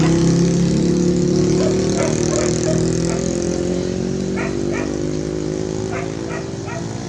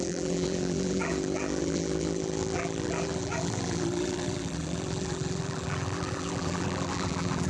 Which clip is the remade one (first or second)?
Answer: second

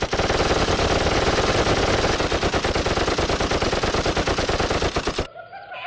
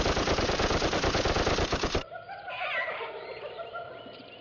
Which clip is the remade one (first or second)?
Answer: second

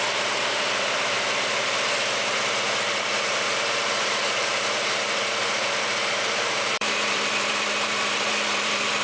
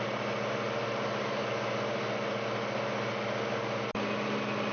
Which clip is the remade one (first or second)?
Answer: first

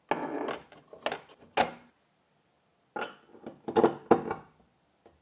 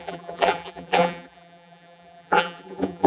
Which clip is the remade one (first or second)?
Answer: second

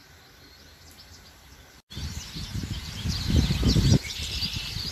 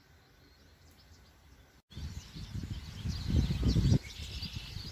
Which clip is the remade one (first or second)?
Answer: first